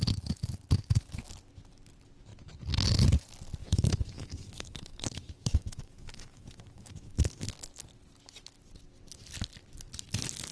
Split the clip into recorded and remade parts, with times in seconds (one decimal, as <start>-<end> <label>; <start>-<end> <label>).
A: 0.0-3.6 recorded; 3.6-7.5 remade; 7.5-10.5 recorded